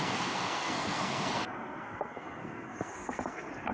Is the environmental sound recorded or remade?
remade